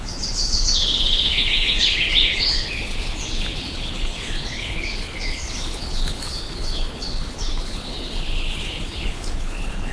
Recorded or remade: remade